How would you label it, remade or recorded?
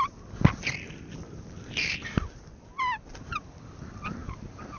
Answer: recorded